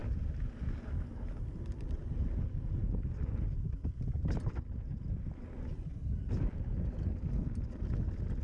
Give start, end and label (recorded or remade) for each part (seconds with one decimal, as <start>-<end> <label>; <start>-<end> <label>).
0.0-8.4 recorded

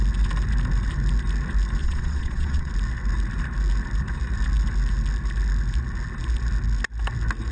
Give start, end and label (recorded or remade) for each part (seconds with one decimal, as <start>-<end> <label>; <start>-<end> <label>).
0.0-1.8 recorded; 1.8-2.7 remade; 2.7-7.5 recorded

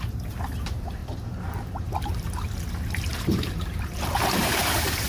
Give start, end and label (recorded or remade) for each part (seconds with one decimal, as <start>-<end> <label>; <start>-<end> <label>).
0.0-5.1 remade

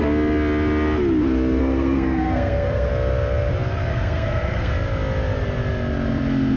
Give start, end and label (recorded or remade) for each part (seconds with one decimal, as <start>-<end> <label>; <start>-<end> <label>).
0.0-1.6 recorded; 1.6-2.9 remade; 2.9-3.9 recorded; 3.9-4.7 remade; 4.7-6.6 recorded

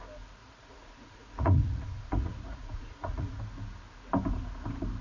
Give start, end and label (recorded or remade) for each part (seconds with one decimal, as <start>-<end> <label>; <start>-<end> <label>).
0.0-0.4 recorded; 0.4-3.4 remade; 3.4-5.0 recorded